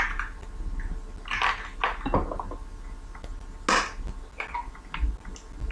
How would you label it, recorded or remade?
recorded